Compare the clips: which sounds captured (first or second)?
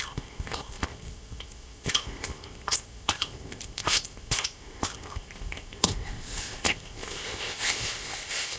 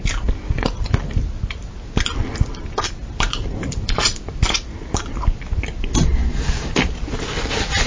second